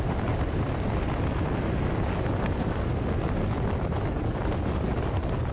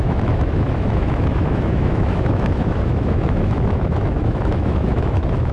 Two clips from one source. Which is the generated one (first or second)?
second